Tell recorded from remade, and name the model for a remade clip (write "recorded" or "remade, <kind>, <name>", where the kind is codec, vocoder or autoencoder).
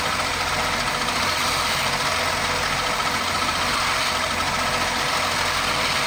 recorded